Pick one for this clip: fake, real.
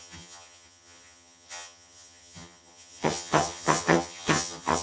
fake